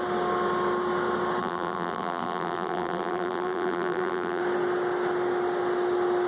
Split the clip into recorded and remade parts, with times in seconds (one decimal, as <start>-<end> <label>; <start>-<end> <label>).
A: 0.0-1.4 recorded; 1.4-4.4 remade; 4.4-6.3 recorded